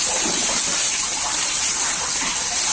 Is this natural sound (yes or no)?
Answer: no